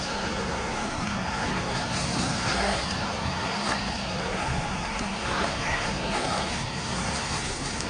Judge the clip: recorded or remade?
remade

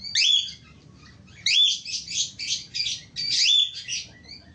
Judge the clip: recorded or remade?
recorded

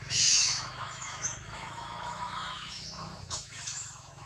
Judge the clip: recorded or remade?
remade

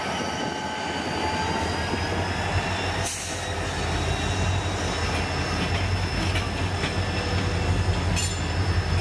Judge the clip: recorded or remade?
recorded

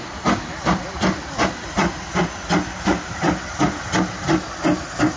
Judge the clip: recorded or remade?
recorded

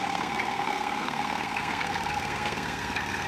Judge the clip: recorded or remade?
remade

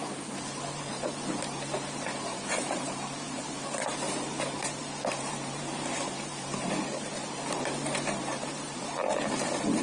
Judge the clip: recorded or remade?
remade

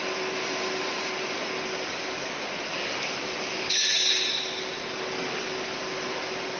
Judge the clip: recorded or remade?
remade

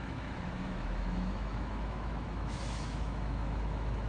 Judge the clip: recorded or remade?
remade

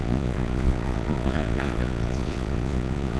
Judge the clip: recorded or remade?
remade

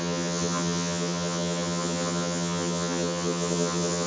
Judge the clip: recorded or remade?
remade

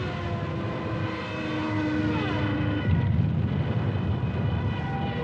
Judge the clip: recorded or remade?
recorded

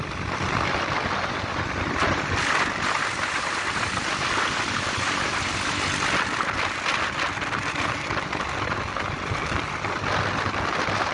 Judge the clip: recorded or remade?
recorded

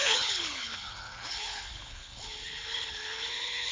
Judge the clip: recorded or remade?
remade